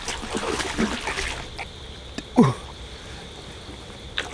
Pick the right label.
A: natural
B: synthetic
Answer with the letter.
A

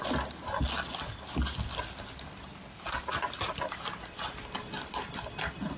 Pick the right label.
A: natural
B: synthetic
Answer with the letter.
A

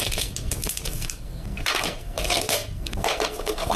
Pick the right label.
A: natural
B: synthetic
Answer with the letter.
B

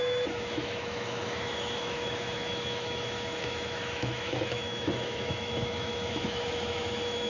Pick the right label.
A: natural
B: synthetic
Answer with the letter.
B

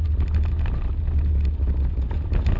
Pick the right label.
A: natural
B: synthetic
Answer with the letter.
A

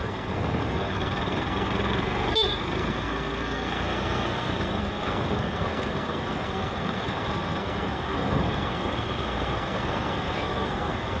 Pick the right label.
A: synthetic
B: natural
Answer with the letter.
A